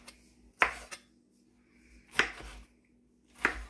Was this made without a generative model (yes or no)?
yes